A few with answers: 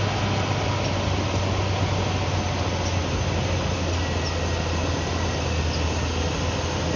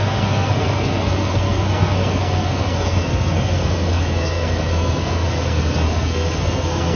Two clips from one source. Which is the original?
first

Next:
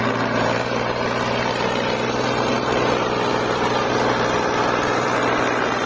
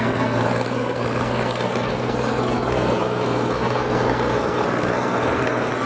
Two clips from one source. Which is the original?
first